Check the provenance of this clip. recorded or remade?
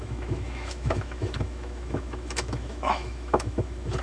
remade